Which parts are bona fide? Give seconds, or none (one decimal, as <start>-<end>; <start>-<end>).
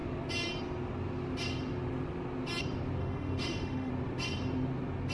0.0-3.0; 3.9-5.1